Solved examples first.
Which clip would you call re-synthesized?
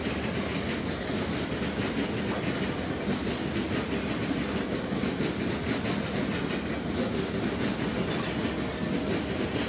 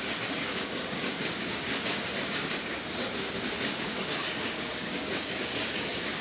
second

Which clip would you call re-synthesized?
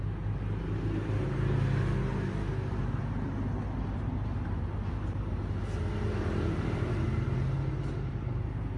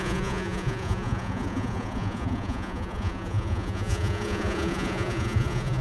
second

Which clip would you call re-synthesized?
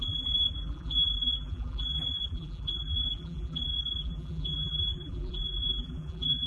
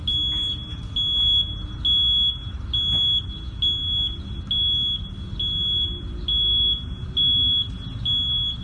first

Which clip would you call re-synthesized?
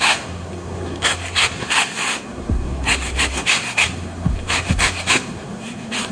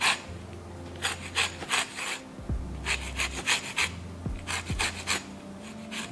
first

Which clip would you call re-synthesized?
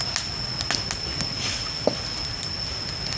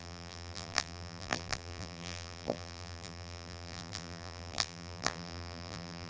second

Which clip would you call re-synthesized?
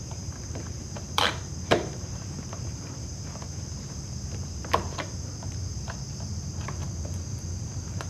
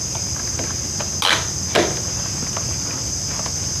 first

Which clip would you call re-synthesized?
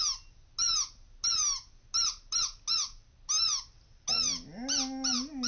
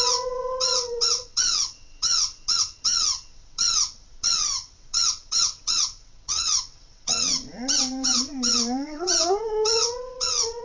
second